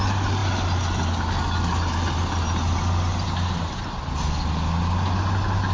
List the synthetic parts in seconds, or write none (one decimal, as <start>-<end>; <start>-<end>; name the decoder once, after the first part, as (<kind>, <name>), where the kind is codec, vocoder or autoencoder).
none